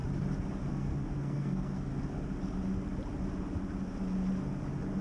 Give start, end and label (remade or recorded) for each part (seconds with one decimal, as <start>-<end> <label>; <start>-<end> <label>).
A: 0.0-0.7 recorded; 0.7-1.9 remade; 1.9-5.0 recorded